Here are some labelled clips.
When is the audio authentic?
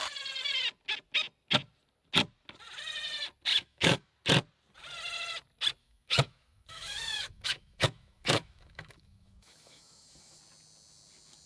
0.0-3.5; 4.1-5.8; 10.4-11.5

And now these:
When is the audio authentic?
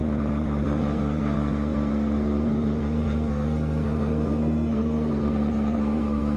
0.0-0.6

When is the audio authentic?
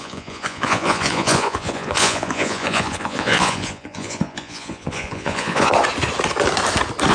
5.7-7.1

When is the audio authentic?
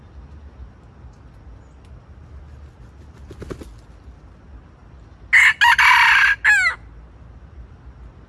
0.0-8.3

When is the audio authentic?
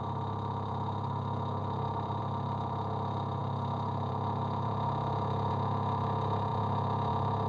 none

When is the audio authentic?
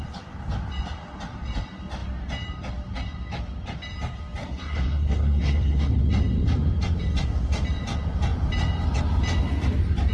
0.0-4.4; 6.0-10.1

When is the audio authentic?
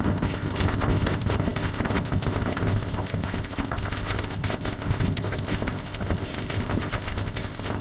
none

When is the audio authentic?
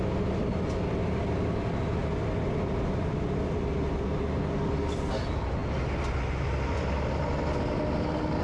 0.0-8.4